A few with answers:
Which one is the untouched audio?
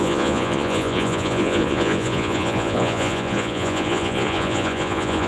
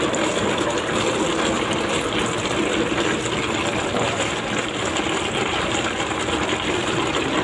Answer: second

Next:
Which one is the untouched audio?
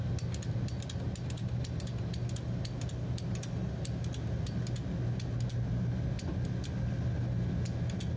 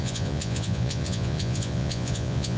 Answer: first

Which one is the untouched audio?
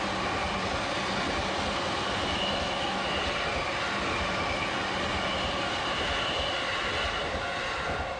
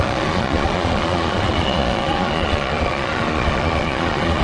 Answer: first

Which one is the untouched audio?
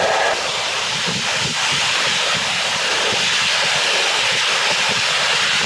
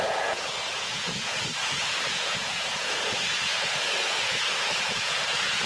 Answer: first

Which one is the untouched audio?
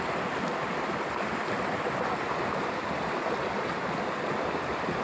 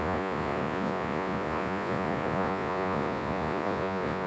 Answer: first